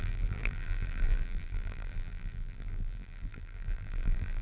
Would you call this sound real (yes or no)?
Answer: no